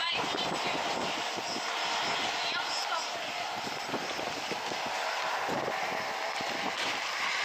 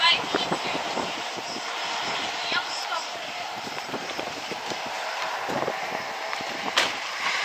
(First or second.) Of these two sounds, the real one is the first